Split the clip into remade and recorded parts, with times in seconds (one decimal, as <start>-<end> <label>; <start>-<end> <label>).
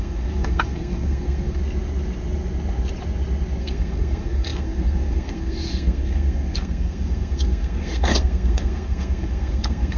0.0-1.6 remade; 1.6-3.6 recorded; 3.6-10.0 remade